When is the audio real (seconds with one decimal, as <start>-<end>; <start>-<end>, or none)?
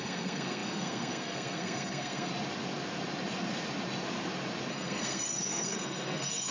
2.3-4.7